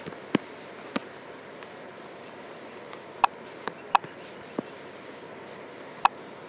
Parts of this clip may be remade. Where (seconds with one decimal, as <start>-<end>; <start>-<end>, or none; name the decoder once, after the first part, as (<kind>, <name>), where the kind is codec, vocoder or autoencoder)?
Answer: none